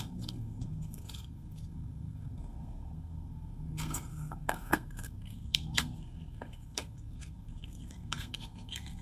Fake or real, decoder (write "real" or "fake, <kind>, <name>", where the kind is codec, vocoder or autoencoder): fake, codec, SNAC